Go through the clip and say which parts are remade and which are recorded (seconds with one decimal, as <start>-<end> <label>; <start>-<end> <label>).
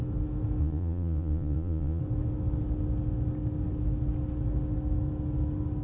0.0-0.6 recorded; 0.6-2.0 remade; 2.0-5.8 recorded